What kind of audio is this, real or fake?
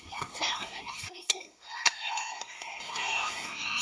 fake